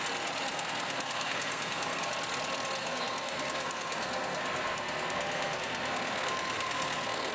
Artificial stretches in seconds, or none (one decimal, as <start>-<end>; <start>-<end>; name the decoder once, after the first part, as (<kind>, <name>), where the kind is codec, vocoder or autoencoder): 0.5-2.1 (codec, SNAC); 2.8-7.3